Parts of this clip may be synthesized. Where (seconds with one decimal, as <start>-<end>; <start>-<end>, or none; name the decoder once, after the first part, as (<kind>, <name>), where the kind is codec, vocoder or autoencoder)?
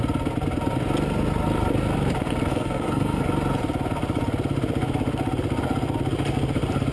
2.5-3.2 (codec, SNAC)